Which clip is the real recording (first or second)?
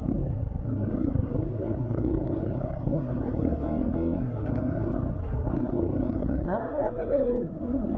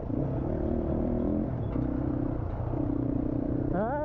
second